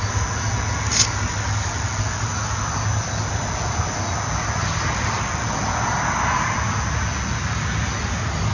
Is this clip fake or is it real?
real